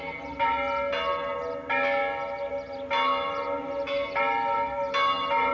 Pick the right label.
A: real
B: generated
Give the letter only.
A